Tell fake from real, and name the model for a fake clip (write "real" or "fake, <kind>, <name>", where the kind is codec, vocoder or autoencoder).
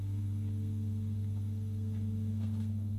fake, codec, SNAC